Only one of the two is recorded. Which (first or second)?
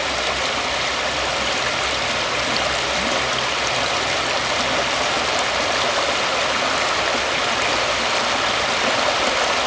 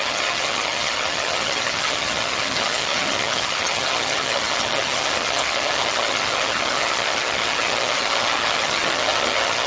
first